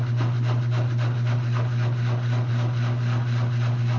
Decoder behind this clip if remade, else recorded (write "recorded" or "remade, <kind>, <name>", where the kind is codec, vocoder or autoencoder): recorded